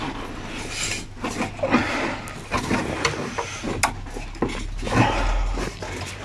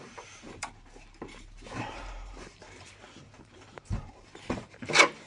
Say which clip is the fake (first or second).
second